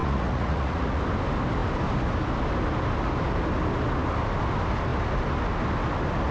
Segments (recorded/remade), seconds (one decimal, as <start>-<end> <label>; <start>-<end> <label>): 0.0-1.0 remade; 1.0-6.3 recorded